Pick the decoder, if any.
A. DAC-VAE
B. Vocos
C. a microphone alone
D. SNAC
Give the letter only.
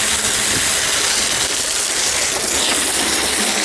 C